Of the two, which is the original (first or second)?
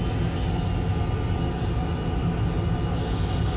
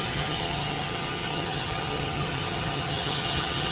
first